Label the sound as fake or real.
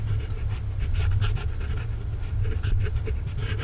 real